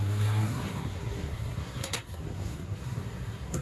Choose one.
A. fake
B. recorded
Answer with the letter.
A